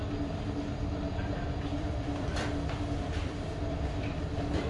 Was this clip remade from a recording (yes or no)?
yes